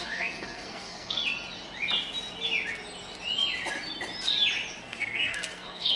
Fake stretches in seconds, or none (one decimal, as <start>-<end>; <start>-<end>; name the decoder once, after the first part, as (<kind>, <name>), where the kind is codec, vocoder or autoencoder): 0.0-1.2 (codec, SNAC); 4.8-6.0

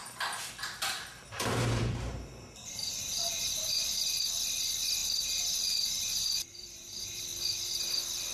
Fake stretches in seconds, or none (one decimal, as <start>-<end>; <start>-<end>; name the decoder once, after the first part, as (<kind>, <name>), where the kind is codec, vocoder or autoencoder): 0.0-3.9 (vocoder, BigVGAN v2); 5.0-7.2